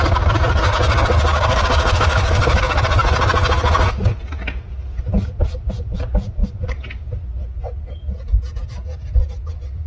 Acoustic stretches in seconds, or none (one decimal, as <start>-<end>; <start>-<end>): 0.0-1.3; 2.6-9.9